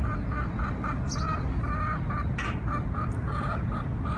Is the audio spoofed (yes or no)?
no